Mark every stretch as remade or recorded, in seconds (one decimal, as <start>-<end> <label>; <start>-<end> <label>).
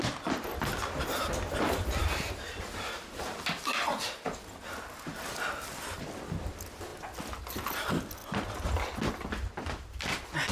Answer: 0.0-2.0 recorded; 2.0-4.4 remade; 4.4-10.5 recorded